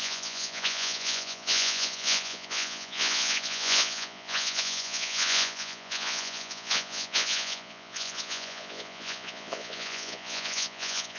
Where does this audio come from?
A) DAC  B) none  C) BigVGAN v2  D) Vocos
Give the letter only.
D